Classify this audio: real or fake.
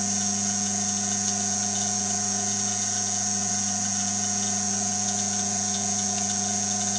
fake